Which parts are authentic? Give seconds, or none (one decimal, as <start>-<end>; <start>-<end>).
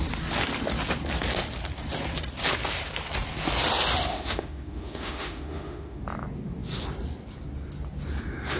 0.0-4.1; 6.0-8.6